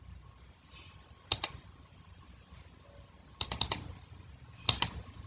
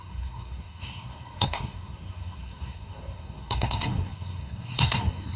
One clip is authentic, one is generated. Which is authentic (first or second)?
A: first